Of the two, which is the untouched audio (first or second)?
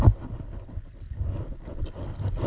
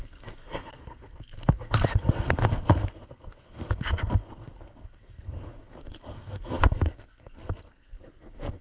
first